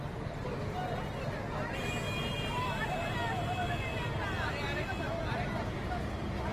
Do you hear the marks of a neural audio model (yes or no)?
no